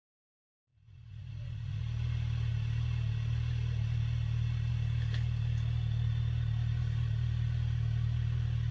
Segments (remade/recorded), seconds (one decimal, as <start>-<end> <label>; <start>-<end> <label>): 0.0-0.7 recorded; 0.7-1.8 remade; 1.8-8.7 recorded